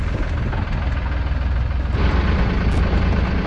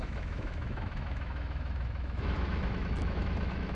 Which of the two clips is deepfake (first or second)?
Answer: second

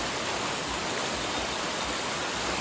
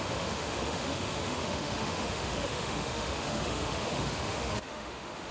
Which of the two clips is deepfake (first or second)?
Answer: second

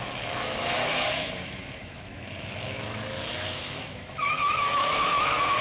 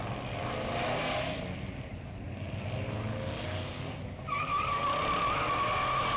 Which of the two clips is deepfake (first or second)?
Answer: first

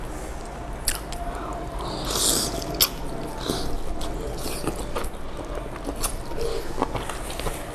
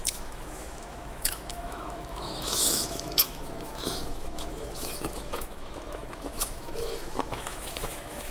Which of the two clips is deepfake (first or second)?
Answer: second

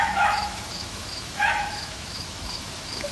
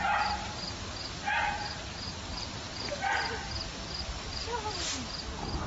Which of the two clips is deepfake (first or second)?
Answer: first